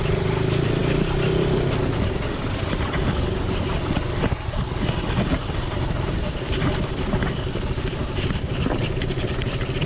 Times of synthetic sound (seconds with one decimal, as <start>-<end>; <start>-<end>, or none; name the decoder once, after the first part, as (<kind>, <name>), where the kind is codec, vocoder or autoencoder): none